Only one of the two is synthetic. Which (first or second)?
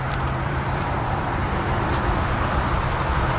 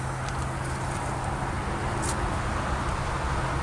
first